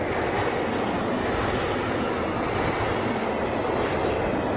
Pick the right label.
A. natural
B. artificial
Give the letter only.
A